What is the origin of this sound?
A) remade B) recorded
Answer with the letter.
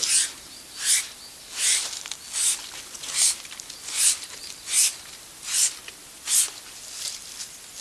B